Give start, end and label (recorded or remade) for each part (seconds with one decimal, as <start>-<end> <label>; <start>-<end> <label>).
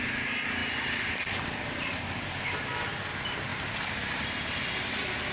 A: 0.0-5.3 recorded